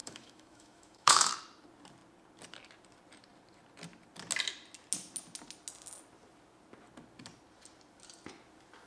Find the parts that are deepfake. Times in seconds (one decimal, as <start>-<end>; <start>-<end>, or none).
0.0-1.3